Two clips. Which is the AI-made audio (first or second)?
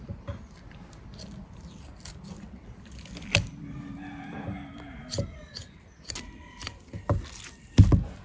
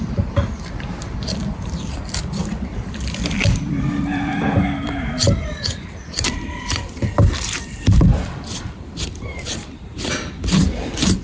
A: second